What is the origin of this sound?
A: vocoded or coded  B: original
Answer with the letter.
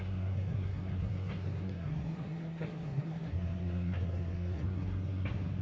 A